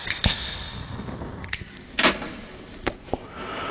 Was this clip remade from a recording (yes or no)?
no